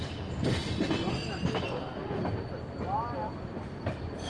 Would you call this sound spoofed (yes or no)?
no